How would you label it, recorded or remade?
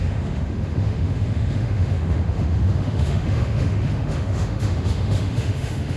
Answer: remade